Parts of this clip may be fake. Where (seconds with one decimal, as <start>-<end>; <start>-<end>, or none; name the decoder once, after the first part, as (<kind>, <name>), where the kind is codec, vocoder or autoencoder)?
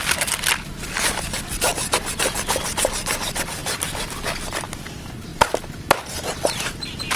none